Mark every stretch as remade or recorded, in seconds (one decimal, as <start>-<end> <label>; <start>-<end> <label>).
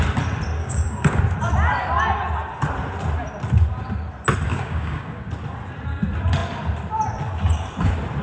0.0-0.6 recorded; 0.6-1.2 remade; 1.2-4.5 recorded; 4.5-5.3 remade; 5.3-8.2 recorded